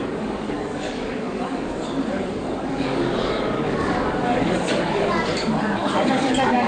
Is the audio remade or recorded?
remade